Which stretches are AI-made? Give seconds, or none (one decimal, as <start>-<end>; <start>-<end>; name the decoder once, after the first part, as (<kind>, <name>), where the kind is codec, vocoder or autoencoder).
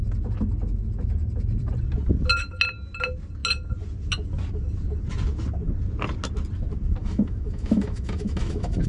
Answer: 7.0-8.9 (autoencoder, DAC-VAE)